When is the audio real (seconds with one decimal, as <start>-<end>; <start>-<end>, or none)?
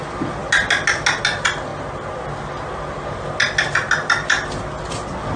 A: 0.0-5.4